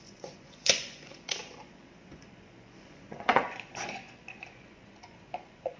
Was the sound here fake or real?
fake